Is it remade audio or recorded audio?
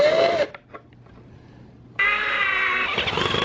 recorded